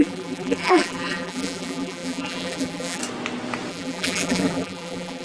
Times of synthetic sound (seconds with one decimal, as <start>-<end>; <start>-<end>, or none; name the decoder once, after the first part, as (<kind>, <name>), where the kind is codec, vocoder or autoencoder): 0.0-3.0 (vocoder, BigVGAN v2); 3.7-5.2